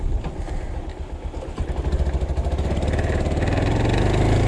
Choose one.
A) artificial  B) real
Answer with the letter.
B